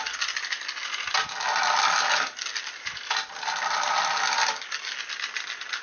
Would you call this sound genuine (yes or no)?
yes